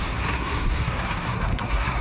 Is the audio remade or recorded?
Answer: remade